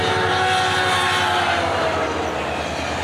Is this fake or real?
real